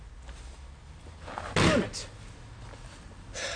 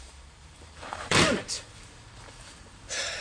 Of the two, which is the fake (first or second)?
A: second